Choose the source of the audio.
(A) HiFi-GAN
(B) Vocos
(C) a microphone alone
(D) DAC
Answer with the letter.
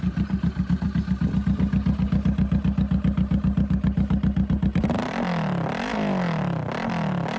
C